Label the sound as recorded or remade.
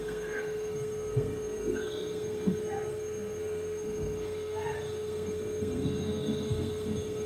remade